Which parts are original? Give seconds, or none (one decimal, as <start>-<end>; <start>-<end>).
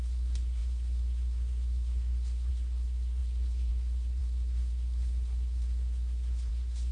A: none